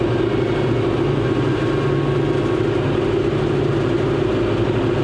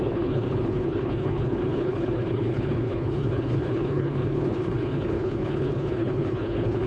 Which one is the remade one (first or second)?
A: second